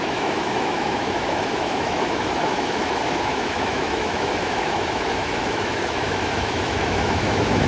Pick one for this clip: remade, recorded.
remade